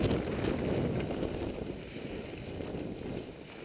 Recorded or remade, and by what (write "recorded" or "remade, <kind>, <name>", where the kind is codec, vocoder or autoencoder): recorded